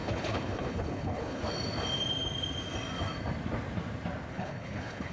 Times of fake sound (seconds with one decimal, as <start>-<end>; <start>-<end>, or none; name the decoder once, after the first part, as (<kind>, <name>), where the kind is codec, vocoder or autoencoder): 0.0-1.4 (codec, HILCodec); 4.3-5.1